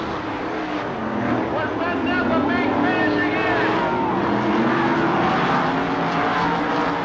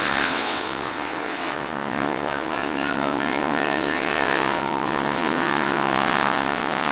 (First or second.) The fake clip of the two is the second